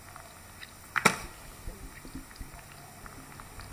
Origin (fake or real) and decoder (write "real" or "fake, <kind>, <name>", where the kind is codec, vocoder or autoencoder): real